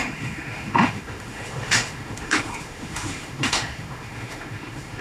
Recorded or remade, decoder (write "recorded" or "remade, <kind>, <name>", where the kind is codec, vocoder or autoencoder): remade, autoencoder, DAC-VAE